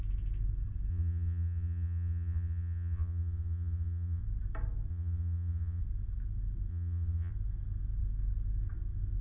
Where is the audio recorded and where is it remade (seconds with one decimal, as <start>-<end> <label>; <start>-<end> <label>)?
0.0-0.9 recorded; 0.9-4.2 remade; 4.2-4.9 recorded; 4.9-5.8 remade; 5.8-6.7 recorded; 6.7-7.3 remade; 7.3-9.2 recorded